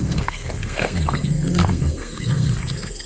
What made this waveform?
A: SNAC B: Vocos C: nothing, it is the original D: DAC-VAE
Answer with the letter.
A